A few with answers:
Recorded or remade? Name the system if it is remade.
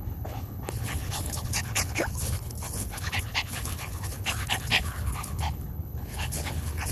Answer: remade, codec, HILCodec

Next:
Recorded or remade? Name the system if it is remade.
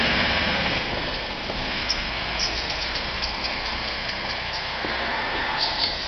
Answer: remade, codec, SNAC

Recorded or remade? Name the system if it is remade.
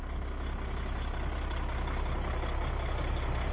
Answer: recorded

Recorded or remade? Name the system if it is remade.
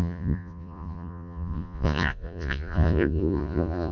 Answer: remade, vocoder, Vocos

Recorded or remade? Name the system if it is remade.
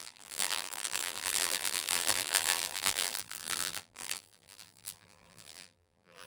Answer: remade, vocoder, BigVGAN v2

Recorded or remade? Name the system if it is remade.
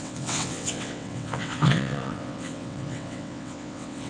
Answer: remade, vocoder, WaveNeXt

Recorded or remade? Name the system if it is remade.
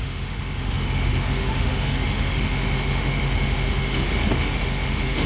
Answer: remade, autoencoder, DAC-VAE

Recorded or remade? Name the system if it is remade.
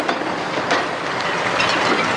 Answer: recorded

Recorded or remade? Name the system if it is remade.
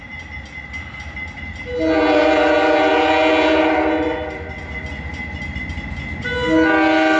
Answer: recorded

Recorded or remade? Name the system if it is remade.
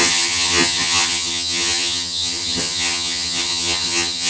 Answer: remade, vocoder, HiFi-GAN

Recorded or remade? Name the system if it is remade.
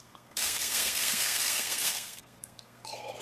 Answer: remade, codec, SNAC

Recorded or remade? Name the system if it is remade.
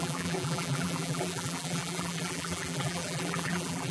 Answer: remade, vocoder, BigVGAN v2